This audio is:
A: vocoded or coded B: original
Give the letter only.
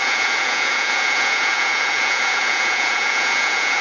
A